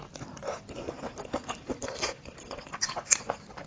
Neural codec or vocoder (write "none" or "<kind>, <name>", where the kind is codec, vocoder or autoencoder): none